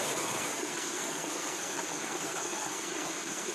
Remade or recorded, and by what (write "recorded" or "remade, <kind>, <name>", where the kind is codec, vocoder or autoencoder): remade, codec, SNAC